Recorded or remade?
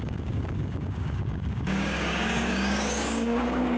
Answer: remade